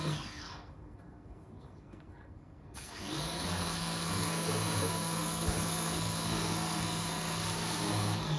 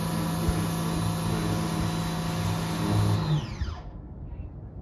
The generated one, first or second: first